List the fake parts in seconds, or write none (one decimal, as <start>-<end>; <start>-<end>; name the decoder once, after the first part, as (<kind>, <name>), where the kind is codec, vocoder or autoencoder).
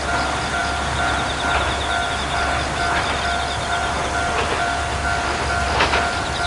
none